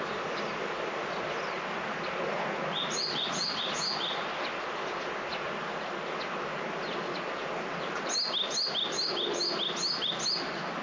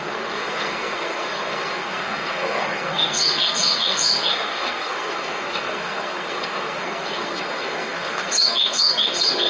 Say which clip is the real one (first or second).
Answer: first